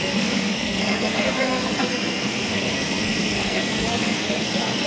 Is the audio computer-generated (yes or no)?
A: yes